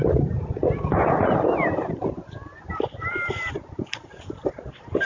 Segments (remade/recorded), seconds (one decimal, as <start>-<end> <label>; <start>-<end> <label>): 0.0-5.0 recorded